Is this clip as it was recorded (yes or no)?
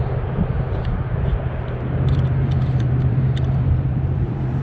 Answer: no